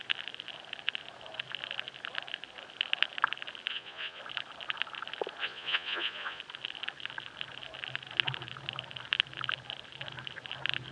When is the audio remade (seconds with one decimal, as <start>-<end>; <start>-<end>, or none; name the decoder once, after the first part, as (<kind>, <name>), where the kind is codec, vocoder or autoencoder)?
3.7-4.2 (vocoder, Vocos); 5.4-6.4